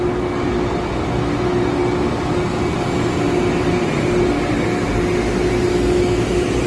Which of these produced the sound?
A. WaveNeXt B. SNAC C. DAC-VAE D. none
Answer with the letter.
D